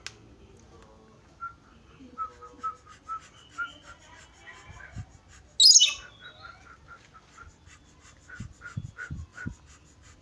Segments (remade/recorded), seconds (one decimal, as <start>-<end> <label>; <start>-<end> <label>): 0.0-10.2 recorded